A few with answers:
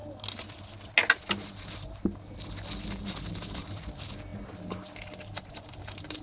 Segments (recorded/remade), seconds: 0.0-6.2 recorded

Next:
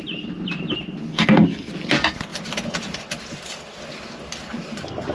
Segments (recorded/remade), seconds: 0.0-1.1 recorded; 1.1-1.7 remade; 1.7-5.1 recorded

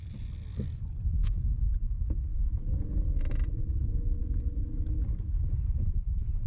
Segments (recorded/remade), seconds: 0.0-1.2 recorded; 1.2-1.7 remade; 1.7-4.2 recorded; 4.2-5.0 remade; 5.0-6.5 recorded

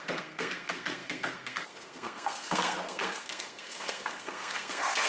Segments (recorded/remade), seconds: 0.0-5.1 remade

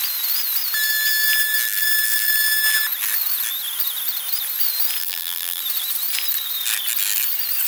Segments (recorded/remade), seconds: 0.0-5.0 recorded; 5.0-5.6 remade; 5.6-7.7 recorded

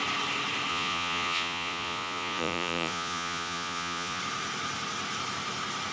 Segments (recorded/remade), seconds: 0.0-0.7 recorded; 0.7-4.2 remade; 4.2-5.9 recorded

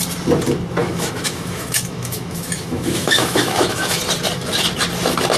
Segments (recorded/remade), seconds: 0.0-0.8 recorded; 0.8-4.0 remade; 4.0-5.4 recorded